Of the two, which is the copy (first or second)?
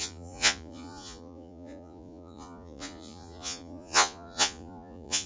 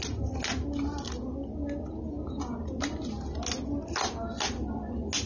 first